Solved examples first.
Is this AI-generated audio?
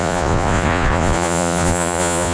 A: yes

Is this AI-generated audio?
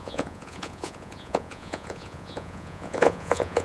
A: yes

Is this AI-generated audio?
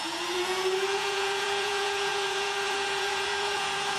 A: yes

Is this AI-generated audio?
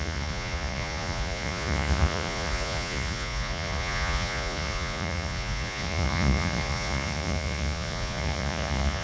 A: yes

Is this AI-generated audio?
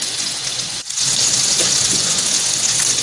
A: yes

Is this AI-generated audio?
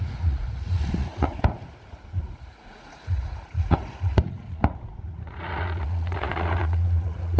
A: yes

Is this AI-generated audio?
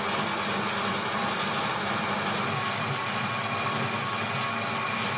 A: no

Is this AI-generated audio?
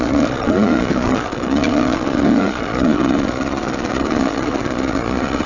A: yes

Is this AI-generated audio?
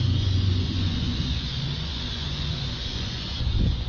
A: yes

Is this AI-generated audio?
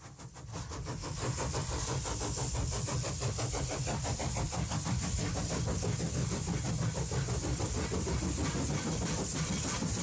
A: no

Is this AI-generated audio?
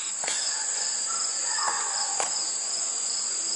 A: yes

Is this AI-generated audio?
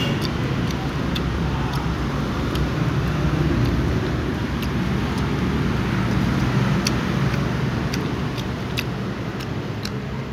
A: no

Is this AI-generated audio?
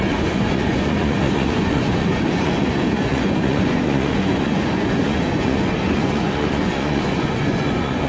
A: yes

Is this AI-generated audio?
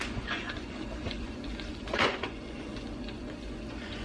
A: yes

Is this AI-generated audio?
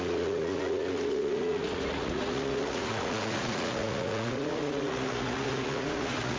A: yes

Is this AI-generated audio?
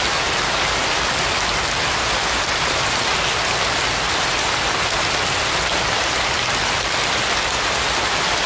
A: no